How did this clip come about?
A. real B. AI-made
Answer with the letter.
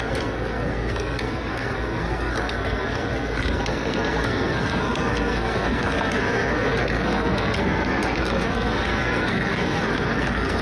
B